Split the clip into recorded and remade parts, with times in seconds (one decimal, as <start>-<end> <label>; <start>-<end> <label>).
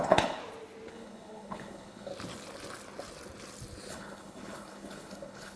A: 0.0-0.4 remade; 0.4-0.9 recorded; 0.9-2.1 remade; 2.1-3.9 recorded; 3.9-5.6 remade